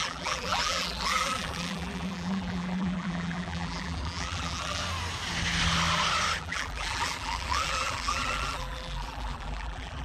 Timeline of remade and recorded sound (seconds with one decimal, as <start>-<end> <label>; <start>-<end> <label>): 0.0-4.8 remade; 4.8-6.4 recorded; 6.4-10.0 remade